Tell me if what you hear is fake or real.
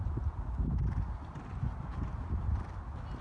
real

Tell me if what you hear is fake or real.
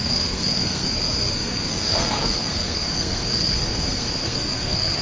fake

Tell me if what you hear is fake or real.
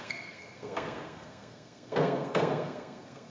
fake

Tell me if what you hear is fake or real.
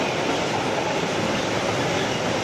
real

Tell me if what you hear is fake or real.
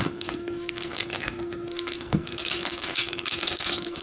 fake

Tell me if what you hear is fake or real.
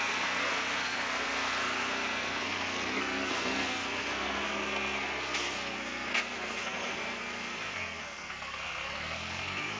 fake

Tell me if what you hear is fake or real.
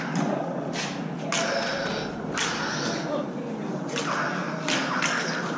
real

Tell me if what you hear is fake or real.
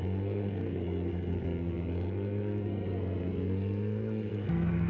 fake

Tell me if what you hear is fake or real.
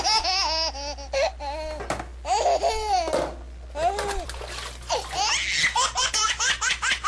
real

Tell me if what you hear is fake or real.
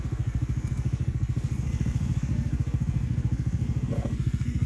fake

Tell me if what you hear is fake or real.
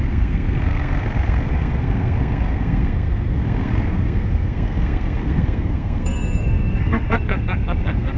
fake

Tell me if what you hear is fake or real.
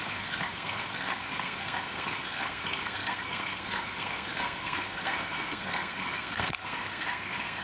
fake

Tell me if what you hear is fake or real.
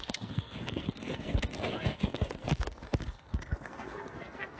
fake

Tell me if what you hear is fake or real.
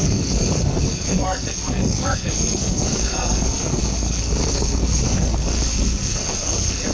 fake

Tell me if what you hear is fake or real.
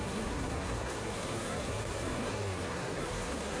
fake